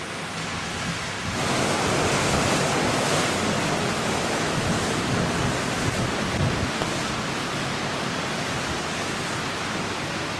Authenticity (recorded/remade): recorded